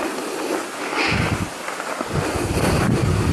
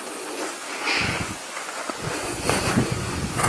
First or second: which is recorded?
first